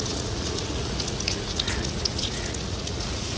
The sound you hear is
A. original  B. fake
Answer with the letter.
B